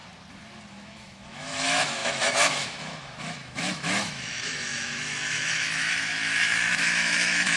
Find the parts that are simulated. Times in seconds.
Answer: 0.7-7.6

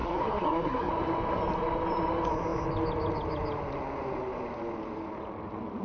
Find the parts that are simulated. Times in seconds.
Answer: 0.0-0.9

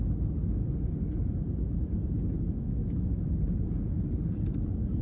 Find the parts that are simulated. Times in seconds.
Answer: 1.2-2.1; 2.8-5.0

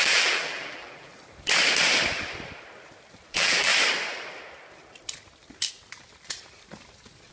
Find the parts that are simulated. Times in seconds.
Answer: 0.0-1.1; 3.3-3.7

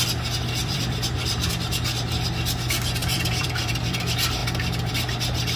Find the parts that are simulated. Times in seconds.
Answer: 0.6-1.5; 3.0-4.0

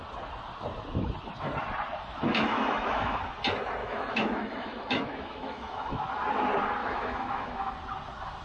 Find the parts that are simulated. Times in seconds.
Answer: 2.3-3.2; 3.8-6.0; 6.8-7.7

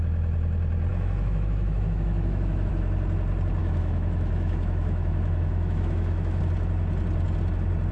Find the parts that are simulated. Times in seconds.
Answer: 0.9-2.7; 3.6-6.4

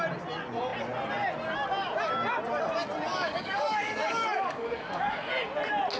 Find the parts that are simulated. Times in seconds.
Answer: 3.1-5.3